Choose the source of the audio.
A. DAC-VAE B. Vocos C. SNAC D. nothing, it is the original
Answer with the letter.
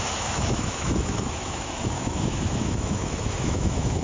A